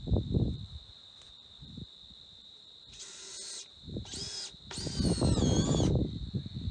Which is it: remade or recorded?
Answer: recorded